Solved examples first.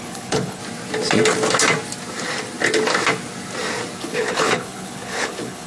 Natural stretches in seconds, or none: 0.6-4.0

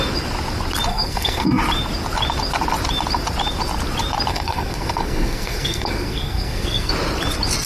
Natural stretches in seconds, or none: 0.0-0.9; 1.6-4.3; 6.9-7.7

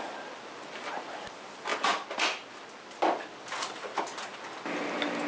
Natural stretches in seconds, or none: 0.0-5.3

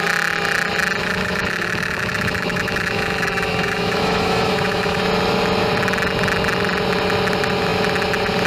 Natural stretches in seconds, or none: 0.0-1.0; 5.0-8.5